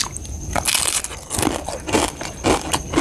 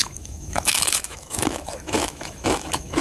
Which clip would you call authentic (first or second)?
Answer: first